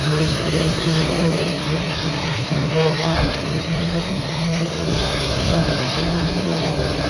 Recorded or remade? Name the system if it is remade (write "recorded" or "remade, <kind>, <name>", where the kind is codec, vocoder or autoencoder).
remade, codec, SNAC